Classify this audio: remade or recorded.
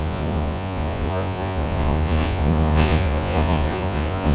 remade